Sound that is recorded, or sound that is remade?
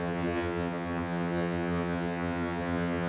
remade